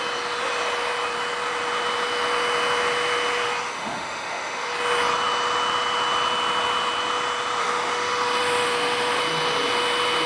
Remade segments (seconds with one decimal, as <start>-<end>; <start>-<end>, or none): 3.7-4.7; 7.6-9.2